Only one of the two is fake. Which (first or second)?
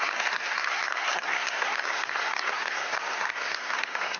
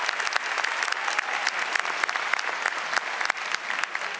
first